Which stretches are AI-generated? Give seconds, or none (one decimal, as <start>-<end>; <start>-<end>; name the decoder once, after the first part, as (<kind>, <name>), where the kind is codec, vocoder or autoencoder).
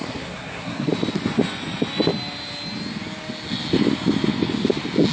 0.0-0.9 (codec, SNAC)